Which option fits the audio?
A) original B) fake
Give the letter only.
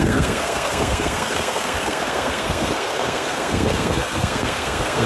B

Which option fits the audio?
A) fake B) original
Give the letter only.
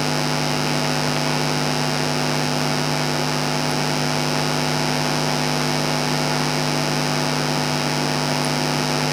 B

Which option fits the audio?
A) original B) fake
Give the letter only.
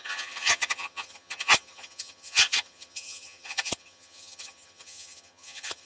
B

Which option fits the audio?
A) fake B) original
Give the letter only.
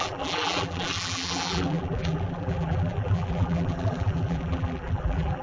A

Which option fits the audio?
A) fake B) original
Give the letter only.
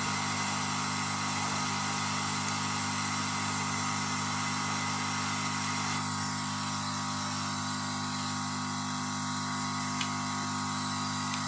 B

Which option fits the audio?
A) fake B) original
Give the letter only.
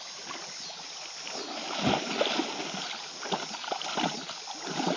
B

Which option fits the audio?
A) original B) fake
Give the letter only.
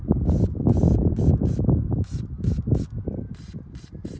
A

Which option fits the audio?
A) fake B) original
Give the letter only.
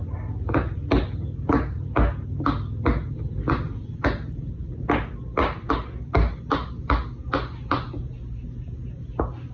B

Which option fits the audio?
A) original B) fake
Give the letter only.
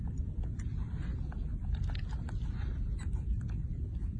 A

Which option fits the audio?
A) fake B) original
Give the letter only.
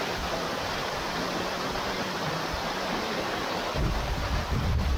A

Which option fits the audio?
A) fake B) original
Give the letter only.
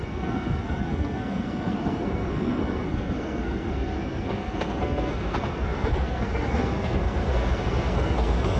A